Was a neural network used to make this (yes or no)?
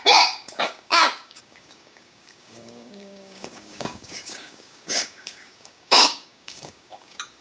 yes